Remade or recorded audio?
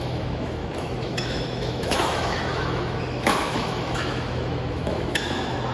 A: remade